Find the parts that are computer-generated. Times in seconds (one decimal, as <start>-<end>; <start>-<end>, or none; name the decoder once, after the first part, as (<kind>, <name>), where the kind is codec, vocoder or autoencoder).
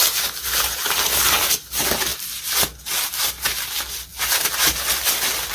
none